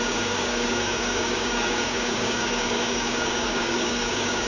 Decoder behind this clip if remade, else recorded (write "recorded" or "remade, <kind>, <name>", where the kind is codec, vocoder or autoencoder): remade, codec, DAC